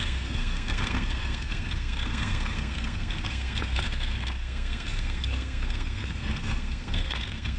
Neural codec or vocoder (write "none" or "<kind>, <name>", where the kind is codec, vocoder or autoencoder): codec, SNAC